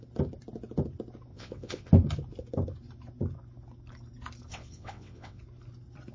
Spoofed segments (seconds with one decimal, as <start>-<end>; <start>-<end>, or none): 1.3-1.9; 4.5-5.4